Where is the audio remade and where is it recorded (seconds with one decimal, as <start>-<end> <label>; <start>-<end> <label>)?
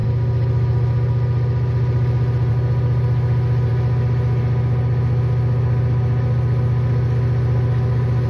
0.0-8.3 recorded